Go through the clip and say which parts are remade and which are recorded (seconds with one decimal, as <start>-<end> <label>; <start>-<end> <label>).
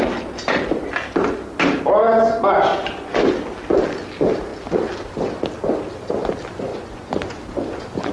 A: 0.0-2.7 recorded; 2.7-3.2 remade; 3.2-6.7 recorded; 6.7-7.4 remade; 7.4-8.1 recorded